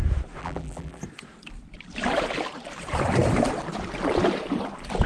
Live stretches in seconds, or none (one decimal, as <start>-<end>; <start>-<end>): 0.0-0.4; 1.0-5.1